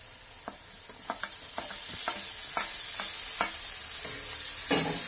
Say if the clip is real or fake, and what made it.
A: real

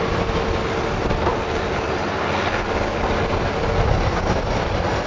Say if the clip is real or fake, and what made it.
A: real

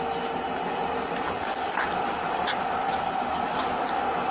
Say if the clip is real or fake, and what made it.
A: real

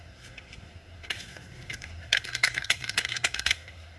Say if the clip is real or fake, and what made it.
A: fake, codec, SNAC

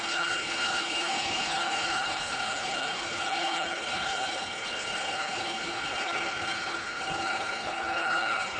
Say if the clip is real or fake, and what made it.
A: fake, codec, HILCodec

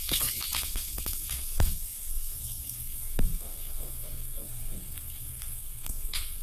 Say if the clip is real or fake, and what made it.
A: fake, codec, SNAC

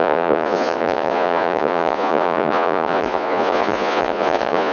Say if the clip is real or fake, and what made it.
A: fake, vocoder, Vocos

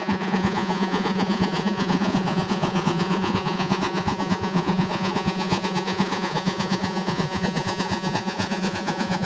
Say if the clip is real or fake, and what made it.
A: fake, vocoder, Vocos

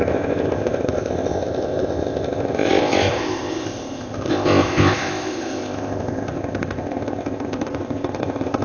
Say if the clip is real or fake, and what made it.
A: fake, codec, ZipCodec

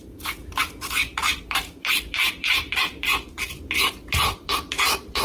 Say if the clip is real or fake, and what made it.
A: fake, vocoder, BigVGAN v2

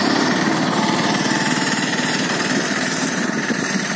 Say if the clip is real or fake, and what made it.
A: fake, vocoder, BigVGAN v2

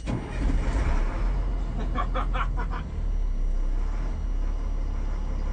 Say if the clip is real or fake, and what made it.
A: real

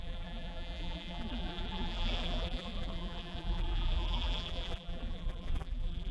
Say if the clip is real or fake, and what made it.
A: fake, vocoder, BigVGAN v2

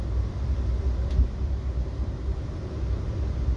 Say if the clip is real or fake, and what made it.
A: real